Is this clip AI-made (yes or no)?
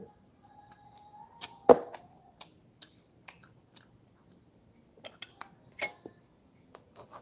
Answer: no